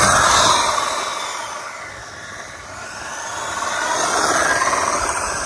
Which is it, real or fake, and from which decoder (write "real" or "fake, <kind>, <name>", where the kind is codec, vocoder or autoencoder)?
real